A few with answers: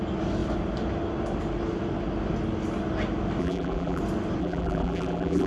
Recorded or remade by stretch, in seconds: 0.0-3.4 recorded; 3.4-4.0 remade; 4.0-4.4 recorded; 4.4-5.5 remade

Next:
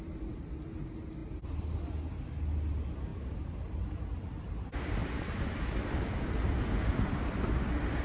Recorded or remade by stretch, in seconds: 0.0-3.1 recorded; 3.1-3.9 remade; 3.9-5.0 recorded; 5.0-6.1 remade; 6.1-8.0 recorded

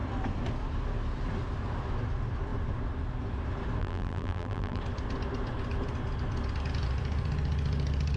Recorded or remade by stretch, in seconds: 0.0-3.8 recorded; 3.8-4.8 remade; 4.8-8.2 recorded